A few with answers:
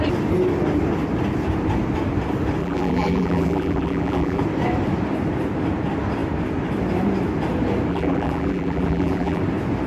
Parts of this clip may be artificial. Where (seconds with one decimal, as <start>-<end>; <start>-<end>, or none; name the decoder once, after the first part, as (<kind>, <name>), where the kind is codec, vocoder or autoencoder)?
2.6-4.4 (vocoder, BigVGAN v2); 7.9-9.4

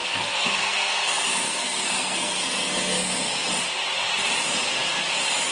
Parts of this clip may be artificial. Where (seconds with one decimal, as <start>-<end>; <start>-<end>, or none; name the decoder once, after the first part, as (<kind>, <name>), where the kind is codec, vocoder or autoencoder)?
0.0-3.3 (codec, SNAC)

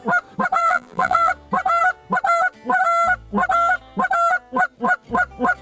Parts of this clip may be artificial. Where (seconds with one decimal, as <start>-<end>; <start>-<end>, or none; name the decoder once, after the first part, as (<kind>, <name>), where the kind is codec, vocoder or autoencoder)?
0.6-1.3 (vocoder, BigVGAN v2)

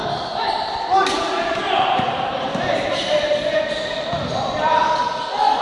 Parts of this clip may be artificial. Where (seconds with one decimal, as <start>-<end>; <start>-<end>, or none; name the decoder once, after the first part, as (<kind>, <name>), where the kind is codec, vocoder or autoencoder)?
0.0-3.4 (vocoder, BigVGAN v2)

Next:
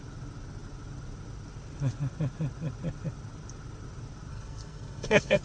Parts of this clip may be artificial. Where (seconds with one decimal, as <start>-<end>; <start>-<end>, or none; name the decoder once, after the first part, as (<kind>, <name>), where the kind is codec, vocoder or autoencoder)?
4.3-5.4 (codec, SNAC)